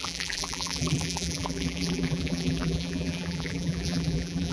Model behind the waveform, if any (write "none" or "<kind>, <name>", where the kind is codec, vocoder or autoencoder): vocoder, BigVGAN v2